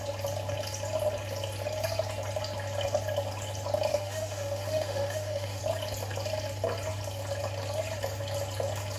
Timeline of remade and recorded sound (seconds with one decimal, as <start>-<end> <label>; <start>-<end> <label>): 0.0-3.9 recorded; 3.9-5.6 remade; 5.6-9.0 recorded